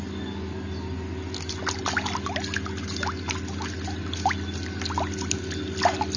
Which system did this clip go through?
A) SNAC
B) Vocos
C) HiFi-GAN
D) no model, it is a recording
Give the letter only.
D